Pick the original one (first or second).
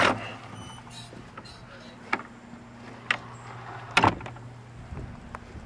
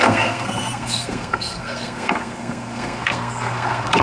first